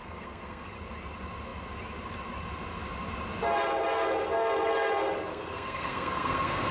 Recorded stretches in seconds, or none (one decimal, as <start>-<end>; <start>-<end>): 0.7-5.3